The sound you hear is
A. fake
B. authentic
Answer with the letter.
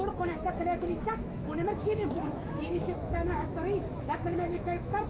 A